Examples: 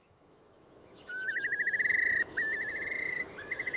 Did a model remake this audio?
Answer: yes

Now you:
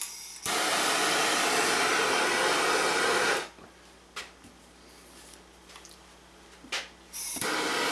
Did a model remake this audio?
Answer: no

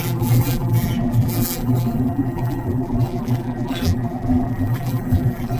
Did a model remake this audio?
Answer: yes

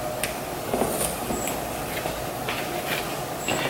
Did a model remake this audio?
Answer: no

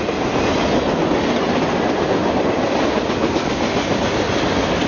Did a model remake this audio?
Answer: no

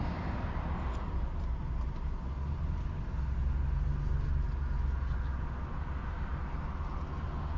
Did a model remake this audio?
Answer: no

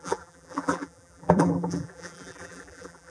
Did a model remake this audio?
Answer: yes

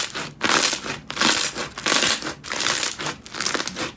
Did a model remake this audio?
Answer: no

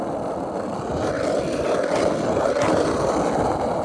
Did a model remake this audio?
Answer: no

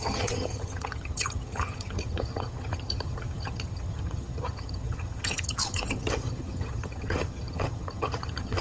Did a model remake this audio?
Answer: yes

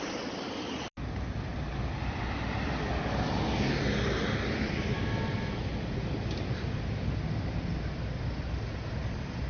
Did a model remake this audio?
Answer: no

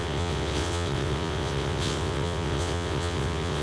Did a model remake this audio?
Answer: yes